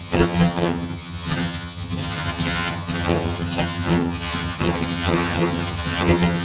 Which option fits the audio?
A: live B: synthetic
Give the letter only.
B